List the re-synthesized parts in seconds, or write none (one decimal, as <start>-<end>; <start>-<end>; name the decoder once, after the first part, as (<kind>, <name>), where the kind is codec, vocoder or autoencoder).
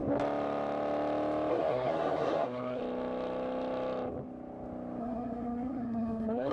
1.5-2.8 (codec, SNAC); 5.0-6.5